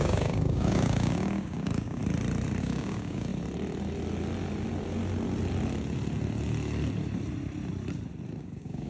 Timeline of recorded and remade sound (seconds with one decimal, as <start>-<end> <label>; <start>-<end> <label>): 0.0-2.0 remade; 2.0-2.6 recorded; 2.6-3.3 remade; 3.3-8.4 recorded; 8.4-8.9 remade